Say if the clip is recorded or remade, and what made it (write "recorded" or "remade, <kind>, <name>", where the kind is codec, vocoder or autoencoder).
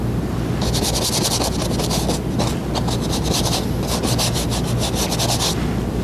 recorded